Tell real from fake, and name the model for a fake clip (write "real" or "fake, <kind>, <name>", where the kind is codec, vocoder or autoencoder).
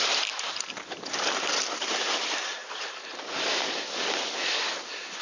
fake, vocoder, BigVGAN v2